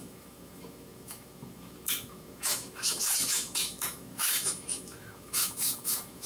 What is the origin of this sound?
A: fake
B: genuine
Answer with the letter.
A